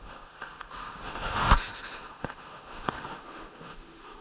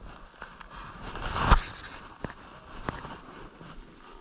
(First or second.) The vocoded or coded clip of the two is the first